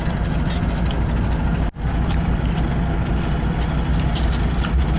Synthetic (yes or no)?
no